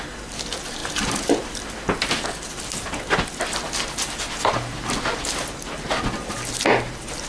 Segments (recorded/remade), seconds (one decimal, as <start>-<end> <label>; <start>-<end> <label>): 0.0-7.3 recorded